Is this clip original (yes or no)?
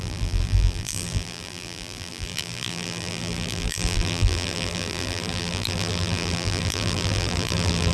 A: no